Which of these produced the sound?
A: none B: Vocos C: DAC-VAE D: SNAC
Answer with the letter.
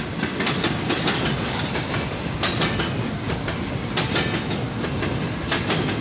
A